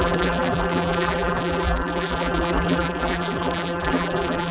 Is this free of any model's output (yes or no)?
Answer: no